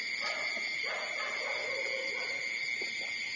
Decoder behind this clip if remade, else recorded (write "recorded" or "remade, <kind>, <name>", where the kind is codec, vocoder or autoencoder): recorded